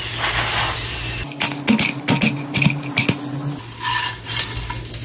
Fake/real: real